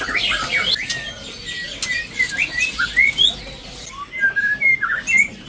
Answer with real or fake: real